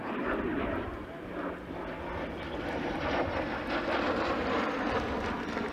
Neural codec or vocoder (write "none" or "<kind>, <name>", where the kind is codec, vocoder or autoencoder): none